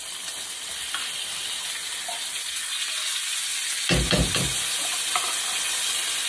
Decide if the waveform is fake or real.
real